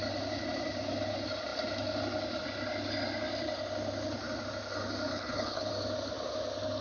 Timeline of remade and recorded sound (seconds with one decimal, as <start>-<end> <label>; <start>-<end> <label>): 0.0-5.1 recorded; 5.1-5.7 remade; 5.7-6.8 recorded